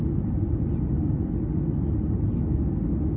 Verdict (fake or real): real